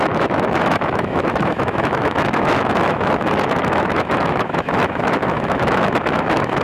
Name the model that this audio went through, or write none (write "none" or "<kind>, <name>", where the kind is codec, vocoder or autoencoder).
autoencoder, DAC-VAE